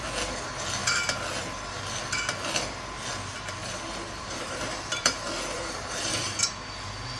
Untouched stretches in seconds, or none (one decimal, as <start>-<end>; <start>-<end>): 0.0-3.6; 6.4-7.2

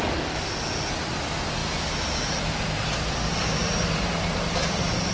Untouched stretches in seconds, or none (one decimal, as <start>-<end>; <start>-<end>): 0.0-3.6

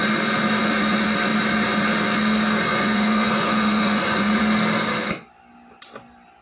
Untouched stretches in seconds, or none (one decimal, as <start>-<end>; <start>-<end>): 0.0-2.7; 4.4-6.4

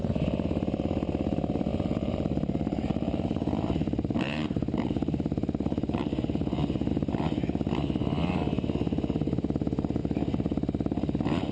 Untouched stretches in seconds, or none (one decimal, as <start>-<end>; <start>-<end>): 0.0-1.7; 6.9-11.5

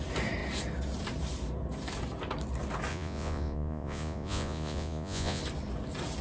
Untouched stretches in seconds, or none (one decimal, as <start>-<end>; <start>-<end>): 0.0-2.9; 5.4-6.2

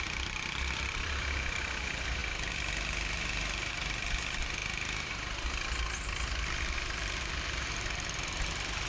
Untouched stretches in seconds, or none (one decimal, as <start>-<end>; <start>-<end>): 2.2-3.7